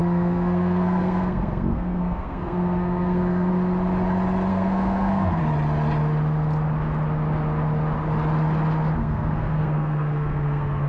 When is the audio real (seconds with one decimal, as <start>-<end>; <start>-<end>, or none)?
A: 3.5-4.5; 5.4-9.0